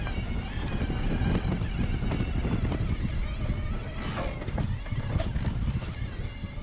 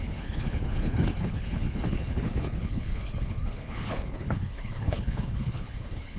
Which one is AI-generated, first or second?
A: second